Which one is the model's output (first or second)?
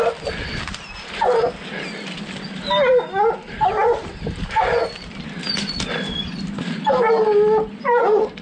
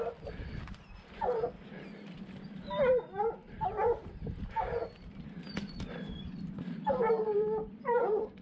second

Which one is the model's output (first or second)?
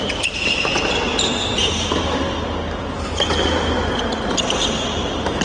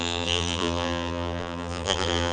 second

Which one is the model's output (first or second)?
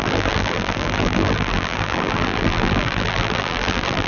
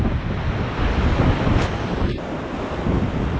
first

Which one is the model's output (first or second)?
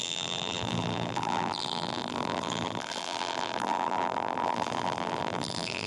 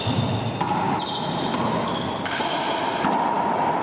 first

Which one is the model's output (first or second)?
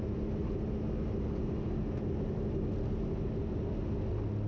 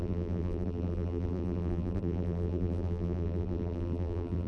second